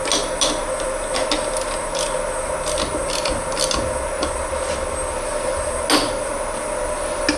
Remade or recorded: recorded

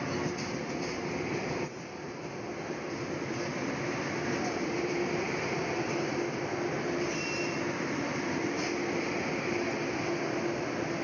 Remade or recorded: recorded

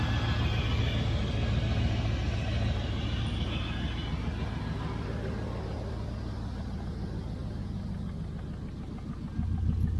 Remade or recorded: recorded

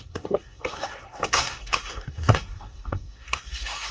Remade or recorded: remade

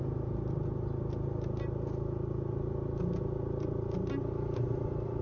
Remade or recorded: recorded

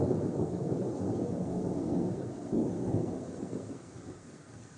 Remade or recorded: remade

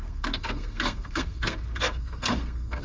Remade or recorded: remade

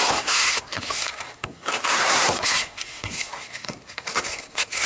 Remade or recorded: remade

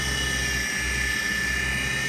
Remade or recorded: recorded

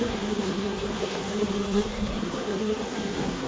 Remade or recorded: remade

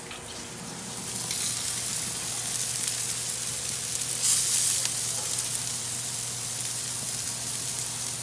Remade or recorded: recorded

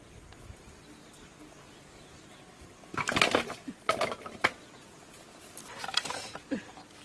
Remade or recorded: recorded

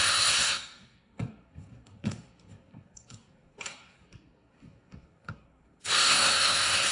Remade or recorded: remade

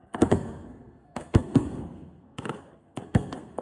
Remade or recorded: remade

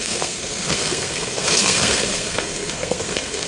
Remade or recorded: remade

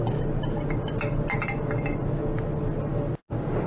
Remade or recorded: recorded